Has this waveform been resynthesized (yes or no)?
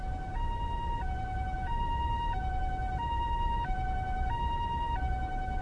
no